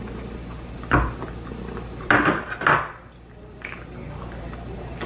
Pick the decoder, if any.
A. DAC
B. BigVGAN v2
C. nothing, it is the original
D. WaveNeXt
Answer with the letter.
C